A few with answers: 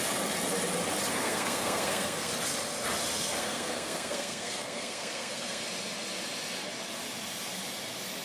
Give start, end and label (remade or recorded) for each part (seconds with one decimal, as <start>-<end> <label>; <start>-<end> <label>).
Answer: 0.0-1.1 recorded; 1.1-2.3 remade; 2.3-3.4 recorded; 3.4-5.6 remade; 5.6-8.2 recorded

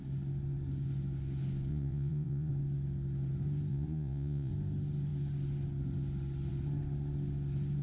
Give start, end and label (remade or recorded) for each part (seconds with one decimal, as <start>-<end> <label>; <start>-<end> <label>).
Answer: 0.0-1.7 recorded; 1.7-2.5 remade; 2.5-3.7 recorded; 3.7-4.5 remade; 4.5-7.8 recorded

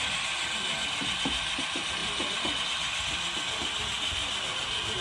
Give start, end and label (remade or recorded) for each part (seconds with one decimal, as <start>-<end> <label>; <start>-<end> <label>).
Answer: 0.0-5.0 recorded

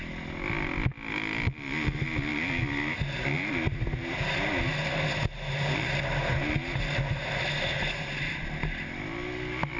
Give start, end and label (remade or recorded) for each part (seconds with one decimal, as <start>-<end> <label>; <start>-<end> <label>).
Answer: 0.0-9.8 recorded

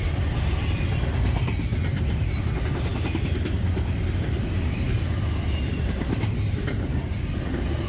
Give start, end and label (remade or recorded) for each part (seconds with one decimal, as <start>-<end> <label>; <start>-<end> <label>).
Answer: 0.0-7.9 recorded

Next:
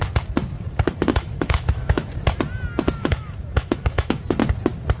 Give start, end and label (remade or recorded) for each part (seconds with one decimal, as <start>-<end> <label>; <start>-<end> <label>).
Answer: 0.0-1.1 recorded; 1.1-2.1 remade; 2.1-3.0 recorded; 3.0-4.2 remade; 4.2-5.0 recorded

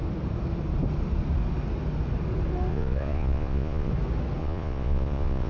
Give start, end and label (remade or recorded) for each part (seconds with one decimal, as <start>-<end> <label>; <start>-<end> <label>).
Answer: 0.0-2.7 recorded; 2.7-3.9 remade; 3.9-4.4 recorded; 4.4-5.5 remade

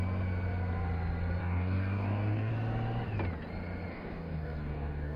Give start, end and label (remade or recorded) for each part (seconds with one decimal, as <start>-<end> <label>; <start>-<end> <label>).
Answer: 0.0-1.4 recorded; 1.4-2.5 remade; 2.5-3.9 recorded; 3.9-5.2 remade